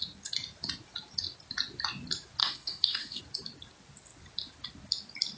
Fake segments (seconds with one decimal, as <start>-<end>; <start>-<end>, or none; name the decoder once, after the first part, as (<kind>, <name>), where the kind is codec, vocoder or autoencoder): 2.4-3.2 (codec, DAC)